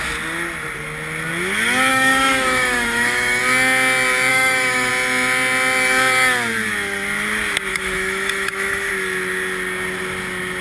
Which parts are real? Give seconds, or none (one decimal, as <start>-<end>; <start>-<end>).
0.0-1.9; 3.4-4.3; 4.9-7.7; 8.9-10.6